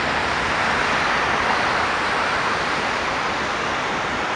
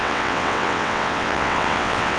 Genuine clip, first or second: first